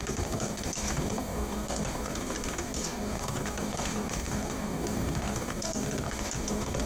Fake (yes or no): yes